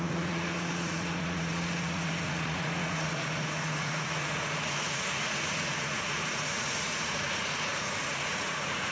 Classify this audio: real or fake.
fake